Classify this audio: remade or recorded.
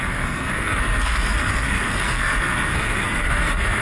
remade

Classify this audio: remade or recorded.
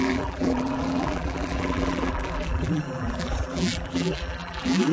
remade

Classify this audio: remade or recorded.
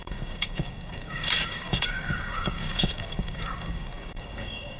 remade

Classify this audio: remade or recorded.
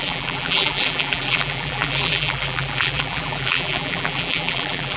remade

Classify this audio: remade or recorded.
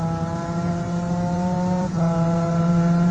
remade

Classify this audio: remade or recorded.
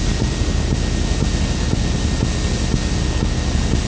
recorded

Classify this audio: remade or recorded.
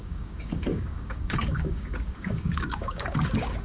remade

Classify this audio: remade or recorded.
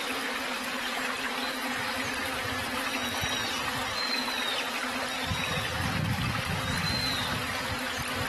recorded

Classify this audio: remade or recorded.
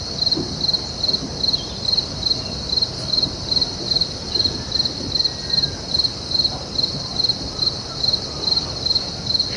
recorded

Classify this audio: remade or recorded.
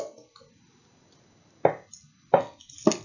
recorded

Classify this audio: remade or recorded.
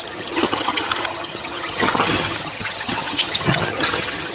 remade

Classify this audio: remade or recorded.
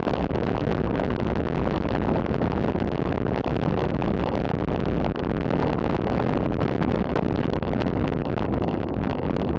recorded